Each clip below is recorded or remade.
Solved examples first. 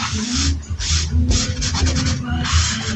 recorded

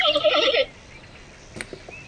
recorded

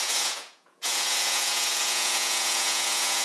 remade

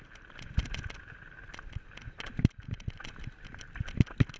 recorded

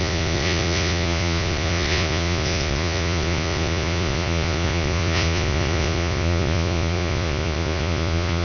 remade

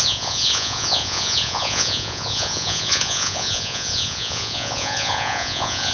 remade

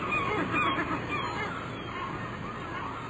recorded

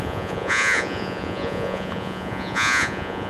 remade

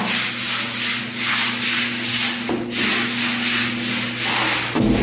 recorded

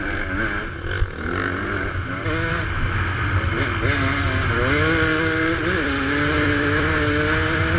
recorded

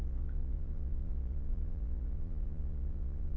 remade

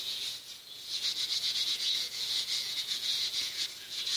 remade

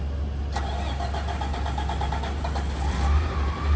recorded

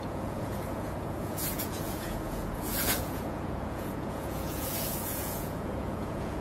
remade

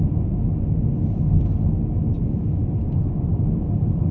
recorded